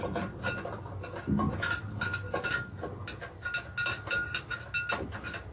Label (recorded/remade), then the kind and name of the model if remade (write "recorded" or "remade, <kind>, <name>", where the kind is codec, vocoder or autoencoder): recorded